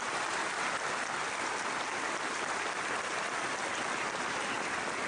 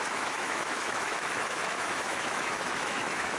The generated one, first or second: second